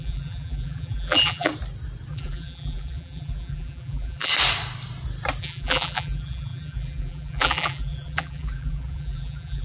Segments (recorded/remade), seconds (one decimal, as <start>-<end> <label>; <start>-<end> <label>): 0.0-1.5 remade; 1.5-2.1 recorded; 2.1-4.3 remade; 4.3-5.4 recorded; 5.4-9.6 remade